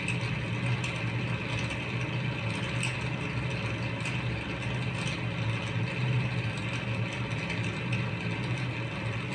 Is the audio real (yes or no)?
yes